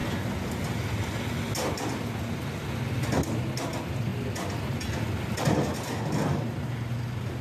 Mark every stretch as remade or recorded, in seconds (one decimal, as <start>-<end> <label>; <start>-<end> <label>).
0.0-7.4 recorded